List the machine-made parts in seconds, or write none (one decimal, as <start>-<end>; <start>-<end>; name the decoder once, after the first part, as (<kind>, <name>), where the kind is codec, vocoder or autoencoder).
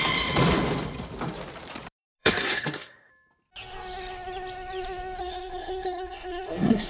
2.2-3.1 (codec, SNAC); 5.2-6.9